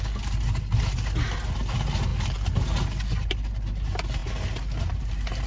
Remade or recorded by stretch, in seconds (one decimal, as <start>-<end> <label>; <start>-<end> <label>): 0.0-5.5 recorded